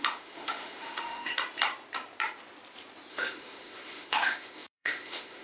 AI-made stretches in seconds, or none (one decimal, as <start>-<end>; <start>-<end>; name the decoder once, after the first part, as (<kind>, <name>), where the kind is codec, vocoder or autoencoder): 0.0-1.3 (autoencoder, DAC-VAE); 3.1-5.4